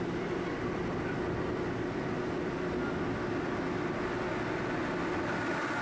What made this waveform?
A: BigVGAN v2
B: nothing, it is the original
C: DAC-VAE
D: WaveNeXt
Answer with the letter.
B